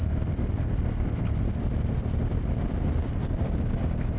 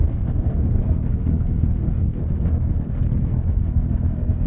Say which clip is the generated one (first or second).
second